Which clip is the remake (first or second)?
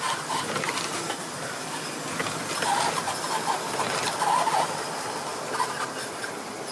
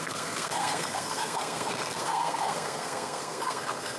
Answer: second